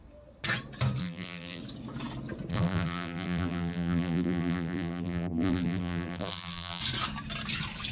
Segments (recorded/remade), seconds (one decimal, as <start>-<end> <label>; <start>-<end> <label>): 0.0-1.0 recorded; 1.0-1.6 remade; 1.6-2.5 recorded; 2.5-6.8 remade; 6.8-7.9 recorded